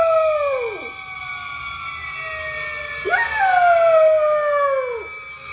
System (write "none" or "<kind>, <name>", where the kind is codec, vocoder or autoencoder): none